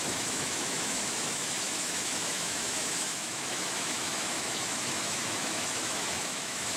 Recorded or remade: remade